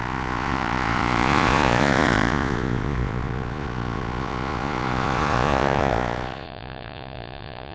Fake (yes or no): yes